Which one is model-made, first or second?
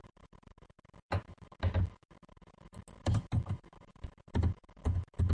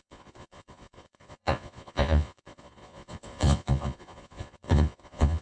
second